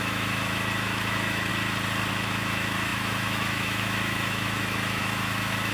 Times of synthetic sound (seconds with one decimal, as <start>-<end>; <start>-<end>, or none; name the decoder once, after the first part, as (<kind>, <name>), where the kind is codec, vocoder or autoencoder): 0.0-1.5 (autoencoder, DAC-VAE); 2.1-5.7